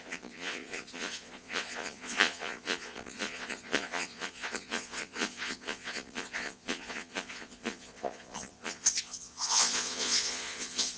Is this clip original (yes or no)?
no